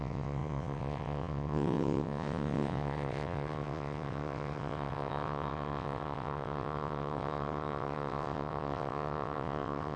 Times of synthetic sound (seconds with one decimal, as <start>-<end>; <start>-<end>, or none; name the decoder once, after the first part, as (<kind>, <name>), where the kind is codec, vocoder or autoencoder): 0.0-10.0 (vocoder, WaveNeXt)